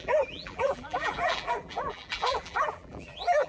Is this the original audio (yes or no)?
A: no